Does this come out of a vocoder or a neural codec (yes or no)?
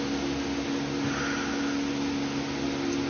no